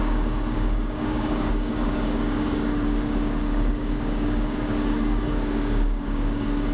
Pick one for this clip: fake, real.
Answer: fake